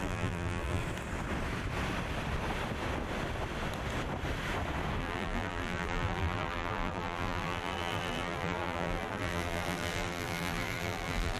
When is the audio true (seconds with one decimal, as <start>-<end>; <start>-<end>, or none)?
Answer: 0.8-5.0